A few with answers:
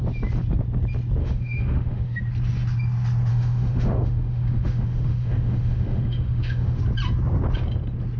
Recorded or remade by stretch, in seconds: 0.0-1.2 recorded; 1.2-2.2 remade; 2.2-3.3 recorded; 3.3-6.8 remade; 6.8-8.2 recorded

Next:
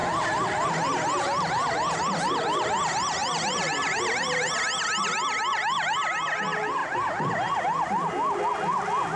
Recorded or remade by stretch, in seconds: 0.0-3.2 recorded; 3.2-4.0 remade; 4.0-9.2 recorded

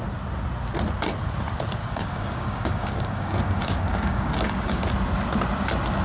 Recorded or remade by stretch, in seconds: 0.0-1.8 recorded; 1.8-4.8 remade; 4.8-6.0 recorded